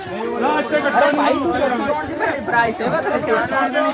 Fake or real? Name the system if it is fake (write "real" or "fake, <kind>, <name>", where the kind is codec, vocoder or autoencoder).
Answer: fake, vocoder, BigVGAN v2